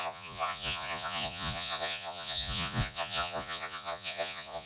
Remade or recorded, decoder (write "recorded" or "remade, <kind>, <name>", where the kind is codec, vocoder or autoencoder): remade, vocoder, Vocos